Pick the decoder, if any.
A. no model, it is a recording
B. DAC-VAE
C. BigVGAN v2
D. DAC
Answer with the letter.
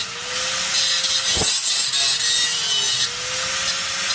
A